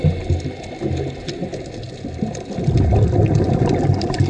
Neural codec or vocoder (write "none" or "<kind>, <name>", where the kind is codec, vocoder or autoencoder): none